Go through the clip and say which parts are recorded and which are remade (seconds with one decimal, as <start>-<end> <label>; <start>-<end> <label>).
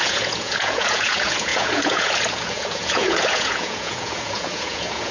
0.0-5.1 remade